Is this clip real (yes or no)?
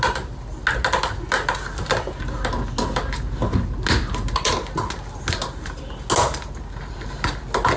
yes